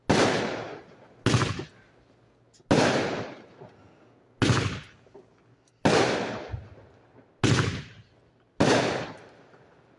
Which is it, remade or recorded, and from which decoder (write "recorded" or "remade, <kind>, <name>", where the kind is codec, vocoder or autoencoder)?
recorded